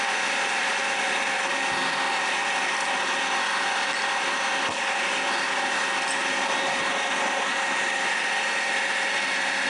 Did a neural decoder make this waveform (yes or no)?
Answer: no